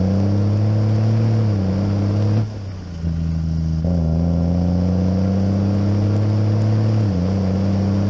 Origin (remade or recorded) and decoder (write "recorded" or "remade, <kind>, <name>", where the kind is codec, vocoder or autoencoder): recorded